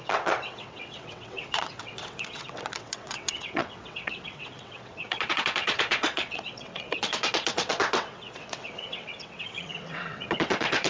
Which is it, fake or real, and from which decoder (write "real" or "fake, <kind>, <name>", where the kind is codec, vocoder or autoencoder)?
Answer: fake, vocoder, WaveNeXt